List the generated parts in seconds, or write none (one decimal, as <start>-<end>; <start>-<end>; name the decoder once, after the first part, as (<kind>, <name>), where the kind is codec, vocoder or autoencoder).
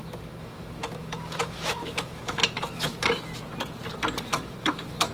0.0-3.3 (autoencoder, DAC-VAE); 4.2-5.1